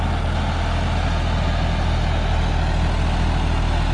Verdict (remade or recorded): recorded